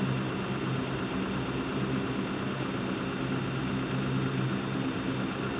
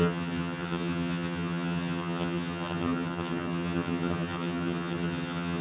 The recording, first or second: first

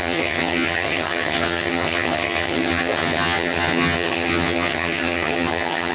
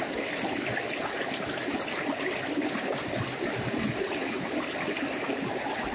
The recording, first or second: second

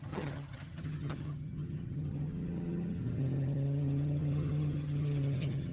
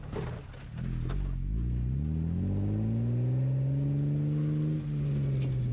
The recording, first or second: second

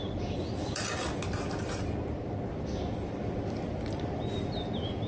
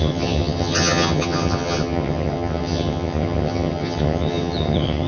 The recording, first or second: first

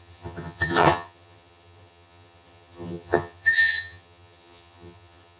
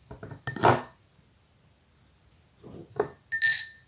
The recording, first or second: second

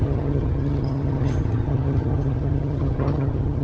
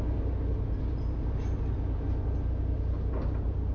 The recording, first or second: second